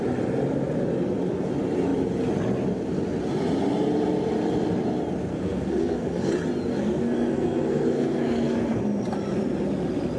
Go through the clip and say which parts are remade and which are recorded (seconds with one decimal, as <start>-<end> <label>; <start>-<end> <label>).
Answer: 0.0-5.3 recorded; 5.3-6.3 remade; 6.3-6.7 recorded; 6.7-8.8 remade; 8.8-10.2 recorded